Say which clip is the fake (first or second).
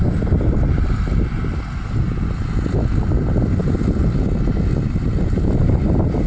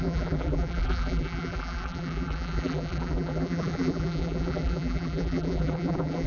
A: second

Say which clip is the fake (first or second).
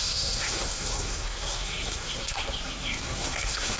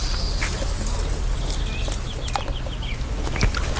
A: first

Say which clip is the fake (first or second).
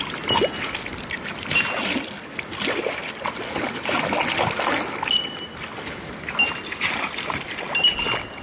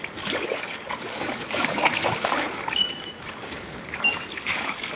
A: second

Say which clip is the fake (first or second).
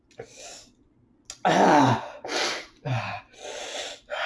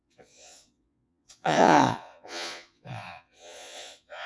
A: second